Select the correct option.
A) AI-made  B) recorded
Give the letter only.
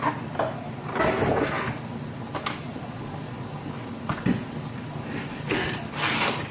B